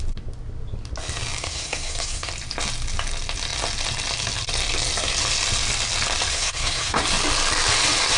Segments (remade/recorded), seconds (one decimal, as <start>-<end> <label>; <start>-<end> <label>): 0.0-1.4 recorded; 1.4-2.3 remade; 2.3-6.3 recorded; 6.3-7.0 remade; 7.0-8.2 recorded